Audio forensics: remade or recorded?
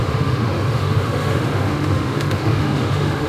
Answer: remade